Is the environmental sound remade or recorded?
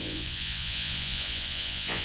remade